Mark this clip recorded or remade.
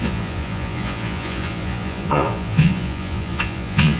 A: remade